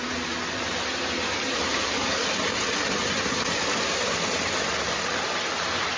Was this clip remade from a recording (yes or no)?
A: no